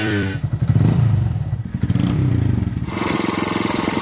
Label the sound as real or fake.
fake